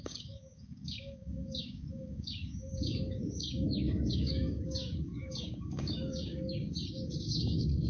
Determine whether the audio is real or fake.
fake